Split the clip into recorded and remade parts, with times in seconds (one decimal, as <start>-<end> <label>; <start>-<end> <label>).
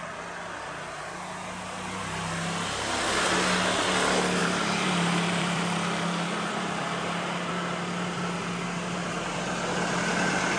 0.0-4.4 recorded; 4.4-7.5 remade; 7.5-10.6 recorded